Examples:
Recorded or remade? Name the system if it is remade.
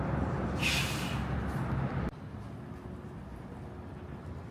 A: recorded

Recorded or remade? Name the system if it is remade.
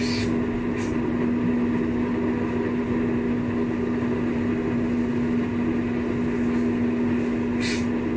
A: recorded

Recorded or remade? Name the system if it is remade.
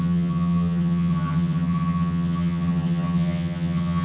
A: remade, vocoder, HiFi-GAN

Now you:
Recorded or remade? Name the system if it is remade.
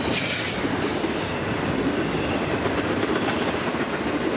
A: recorded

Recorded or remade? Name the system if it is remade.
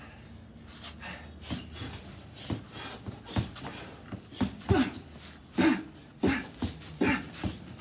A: recorded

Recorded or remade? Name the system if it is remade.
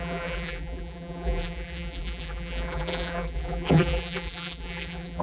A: remade, vocoder, BigVGAN v2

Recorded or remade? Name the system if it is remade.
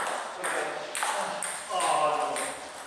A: recorded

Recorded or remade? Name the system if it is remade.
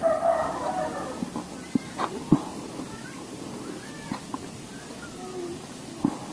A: recorded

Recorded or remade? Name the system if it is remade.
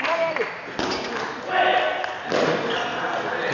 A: recorded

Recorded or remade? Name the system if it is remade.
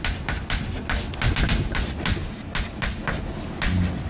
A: recorded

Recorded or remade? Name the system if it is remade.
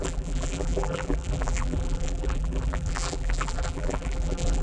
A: remade, vocoder, BigVGAN v2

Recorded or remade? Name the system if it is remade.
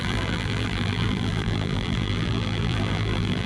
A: remade, vocoder, BigVGAN v2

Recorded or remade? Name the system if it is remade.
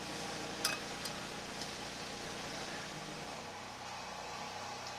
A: recorded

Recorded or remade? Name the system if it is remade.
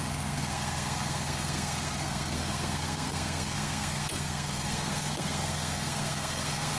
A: remade, codec, SNAC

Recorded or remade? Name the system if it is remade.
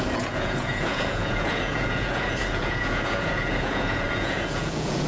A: remade, vocoder, Vocos